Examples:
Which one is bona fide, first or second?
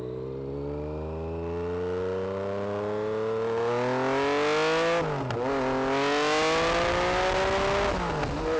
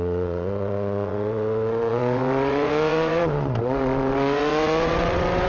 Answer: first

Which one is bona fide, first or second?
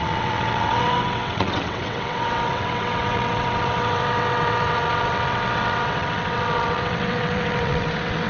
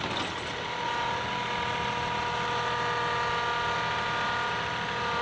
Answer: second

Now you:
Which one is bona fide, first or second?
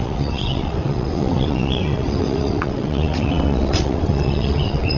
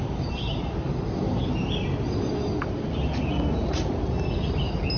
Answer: second